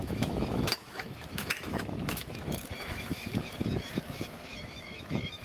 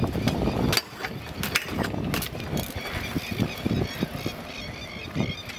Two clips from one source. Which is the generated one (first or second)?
first